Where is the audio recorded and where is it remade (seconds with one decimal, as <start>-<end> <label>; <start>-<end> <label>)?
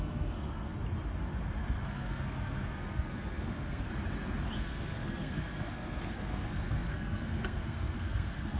0.0-0.8 remade; 0.8-1.8 recorded; 1.8-3.9 remade; 3.9-4.6 recorded; 4.6-8.6 remade